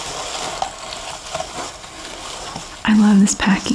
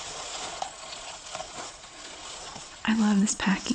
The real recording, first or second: first